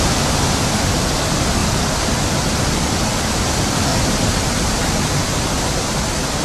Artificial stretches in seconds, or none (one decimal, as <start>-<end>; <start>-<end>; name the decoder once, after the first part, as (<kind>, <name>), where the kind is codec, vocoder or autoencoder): 3.9-4.6 (vocoder, BigVGAN v2)